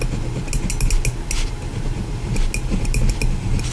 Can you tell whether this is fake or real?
real